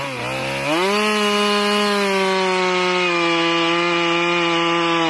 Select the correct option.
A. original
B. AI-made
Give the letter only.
A